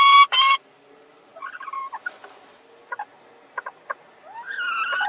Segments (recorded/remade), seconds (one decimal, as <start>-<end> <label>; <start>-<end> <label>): 0.0-5.1 recorded